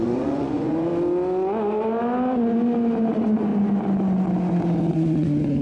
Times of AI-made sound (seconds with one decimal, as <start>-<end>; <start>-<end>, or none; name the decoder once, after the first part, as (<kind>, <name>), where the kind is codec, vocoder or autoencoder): 0.0-0.9 (vocoder, Vocos); 3.1-3.5; 4.9-5.6